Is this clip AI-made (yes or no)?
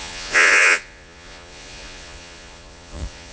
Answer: yes